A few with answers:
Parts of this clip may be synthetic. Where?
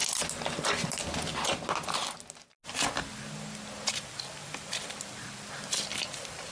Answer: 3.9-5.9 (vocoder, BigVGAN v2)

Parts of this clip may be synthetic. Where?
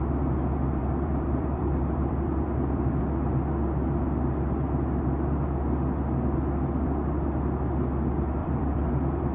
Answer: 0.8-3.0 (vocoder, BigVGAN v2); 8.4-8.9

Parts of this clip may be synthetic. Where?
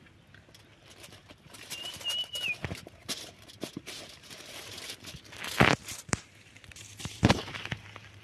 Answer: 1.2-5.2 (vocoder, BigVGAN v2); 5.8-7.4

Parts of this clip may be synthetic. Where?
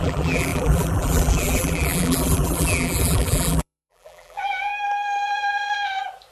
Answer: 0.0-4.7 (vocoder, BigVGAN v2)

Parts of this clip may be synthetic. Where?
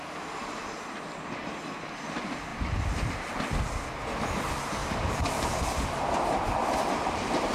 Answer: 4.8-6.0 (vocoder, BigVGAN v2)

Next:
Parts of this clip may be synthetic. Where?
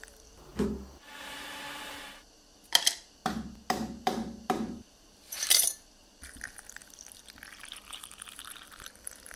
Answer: 0.0-0.5 (vocoder, BigVGAN v2); 1.2-3.2; 4.0-6.8; 7.9-9.4